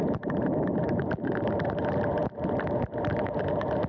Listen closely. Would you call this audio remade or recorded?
remade